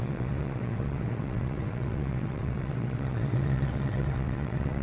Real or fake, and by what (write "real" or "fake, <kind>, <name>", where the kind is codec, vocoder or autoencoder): fake, vocoder, WaveNeXt